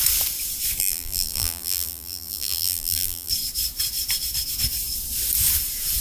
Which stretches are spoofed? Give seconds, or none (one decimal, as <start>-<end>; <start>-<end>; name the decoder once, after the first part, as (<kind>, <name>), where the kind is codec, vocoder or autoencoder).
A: 0.8-3.3 (vocoder, BigVGAN v2)